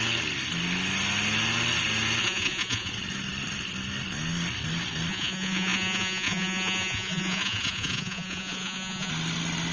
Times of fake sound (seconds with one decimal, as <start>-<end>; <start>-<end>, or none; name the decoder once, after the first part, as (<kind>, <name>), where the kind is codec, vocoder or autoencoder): 2.2-2.9 (vocoder, Vocos); 5.1-9.1